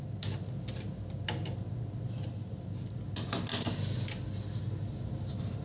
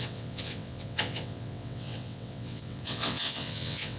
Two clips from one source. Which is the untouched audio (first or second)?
first